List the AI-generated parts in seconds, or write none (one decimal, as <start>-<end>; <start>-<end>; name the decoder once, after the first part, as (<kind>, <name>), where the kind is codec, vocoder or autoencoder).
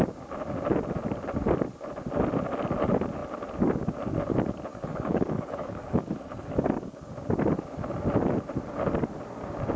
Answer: 4.7-7.1 (codec, DAC)